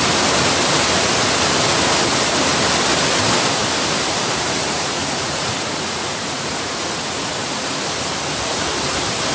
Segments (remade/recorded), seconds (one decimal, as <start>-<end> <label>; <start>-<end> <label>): 0.0-4.6 recorded; 4.6-7.8 remade; 7.8-9.3 recorded